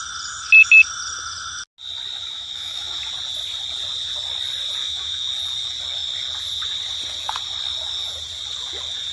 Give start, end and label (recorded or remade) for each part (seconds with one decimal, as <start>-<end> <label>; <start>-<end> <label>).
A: 0.0-2.2 recorded; 2.2-3.0 remade; 3.0-4.8 recorded; 4.8-5.3 remade; 5.3-9.1 recorded